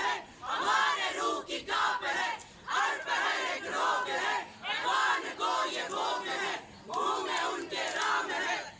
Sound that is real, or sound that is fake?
real